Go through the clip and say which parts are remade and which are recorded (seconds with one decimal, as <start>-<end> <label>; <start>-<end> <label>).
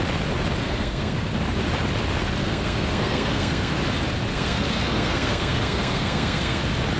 0.0-0.6 recorded; 0.6-1.3 remade; 1.3-2.4 recorded; 2.4-3.8 remade; 3.8-4.3 recorded; 4.3-6.6 remade; 6.6-7.0 recorded